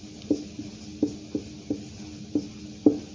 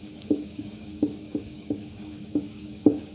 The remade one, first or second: second